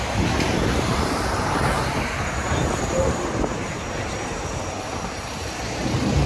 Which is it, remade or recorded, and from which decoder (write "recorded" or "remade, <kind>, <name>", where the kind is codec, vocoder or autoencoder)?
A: remade, vocoder, BigVGAN v2